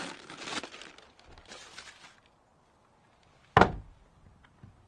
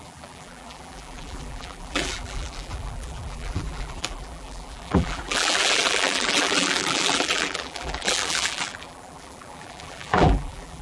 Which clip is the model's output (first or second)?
second